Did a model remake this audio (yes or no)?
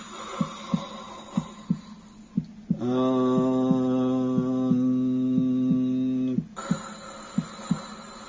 no